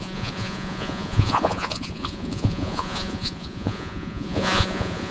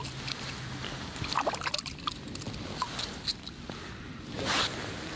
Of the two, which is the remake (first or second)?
first